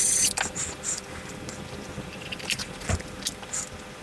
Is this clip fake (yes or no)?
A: no